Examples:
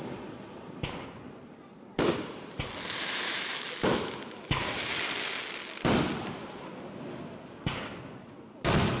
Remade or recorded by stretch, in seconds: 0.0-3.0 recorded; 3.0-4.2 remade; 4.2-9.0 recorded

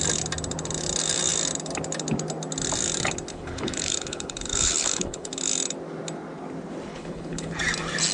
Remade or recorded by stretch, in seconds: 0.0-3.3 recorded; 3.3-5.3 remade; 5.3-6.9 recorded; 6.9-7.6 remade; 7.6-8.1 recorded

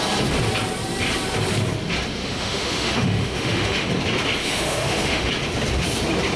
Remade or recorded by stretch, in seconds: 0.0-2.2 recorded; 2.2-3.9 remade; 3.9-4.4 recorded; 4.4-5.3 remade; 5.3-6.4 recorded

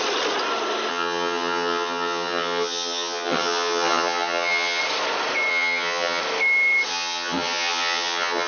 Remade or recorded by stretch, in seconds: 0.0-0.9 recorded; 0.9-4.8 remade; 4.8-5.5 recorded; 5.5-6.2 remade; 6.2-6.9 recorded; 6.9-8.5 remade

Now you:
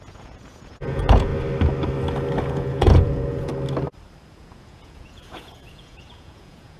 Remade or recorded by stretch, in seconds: 0.0-1.3 remade; 1.3-2.4 recorded; 2.4-3.5 remade; 3.5-4.3 recorded; 4.3-6.8 remade